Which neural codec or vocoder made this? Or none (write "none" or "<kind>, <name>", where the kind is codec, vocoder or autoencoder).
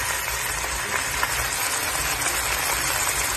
none